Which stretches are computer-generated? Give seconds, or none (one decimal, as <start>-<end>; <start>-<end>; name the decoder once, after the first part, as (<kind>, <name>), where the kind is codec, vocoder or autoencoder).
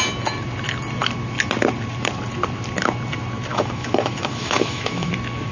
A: 3.5-5.1 (autoencoder, DAC-VAE)